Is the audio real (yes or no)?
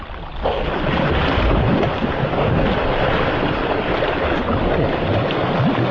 yes